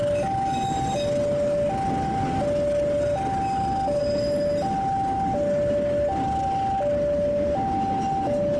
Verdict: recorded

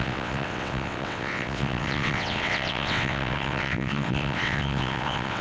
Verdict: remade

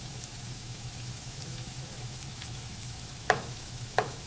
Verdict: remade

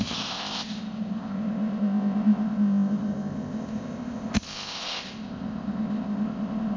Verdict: remade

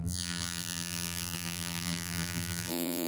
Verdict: remade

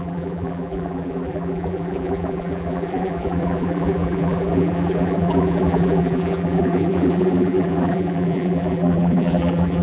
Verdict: remade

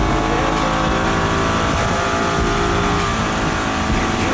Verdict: recorded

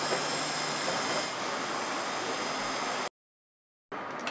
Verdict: recorded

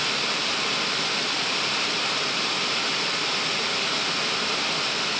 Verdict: recorded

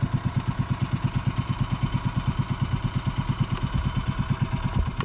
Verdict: recorded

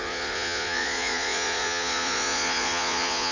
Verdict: remade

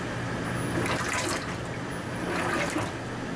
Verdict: recorded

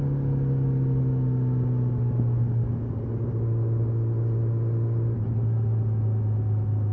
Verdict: recorded